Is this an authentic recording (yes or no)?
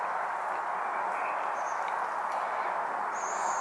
yes